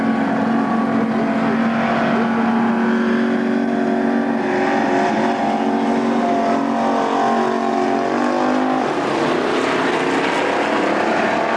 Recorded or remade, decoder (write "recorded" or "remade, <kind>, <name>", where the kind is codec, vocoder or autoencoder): recorded